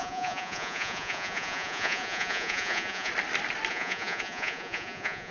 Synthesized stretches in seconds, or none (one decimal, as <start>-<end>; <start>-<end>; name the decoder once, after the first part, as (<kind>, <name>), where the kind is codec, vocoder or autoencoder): 0.0-3.1 (vocoder, Vocos); 3.7-5.3

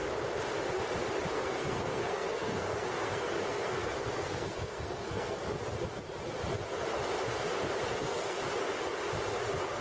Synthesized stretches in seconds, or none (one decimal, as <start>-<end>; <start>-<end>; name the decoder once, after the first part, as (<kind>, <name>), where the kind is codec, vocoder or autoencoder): 1.3-5.4 (codec, SNAC); 8.0-8.4

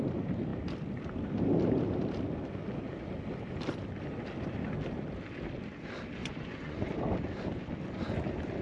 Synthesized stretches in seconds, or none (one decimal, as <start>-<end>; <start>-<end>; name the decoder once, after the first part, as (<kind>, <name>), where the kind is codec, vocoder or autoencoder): 6.2-6.9 (vocoder, Vocos)

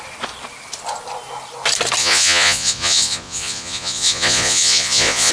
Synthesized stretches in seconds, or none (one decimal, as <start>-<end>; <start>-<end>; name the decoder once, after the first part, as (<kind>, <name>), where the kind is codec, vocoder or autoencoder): 2.0-5.3 (vocoder, Vocos)